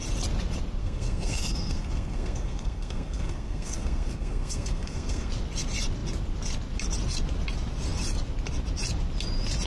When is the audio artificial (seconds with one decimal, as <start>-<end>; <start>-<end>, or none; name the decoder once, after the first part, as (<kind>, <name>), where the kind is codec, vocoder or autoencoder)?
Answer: 0.8-5.3 (codec, SNAC)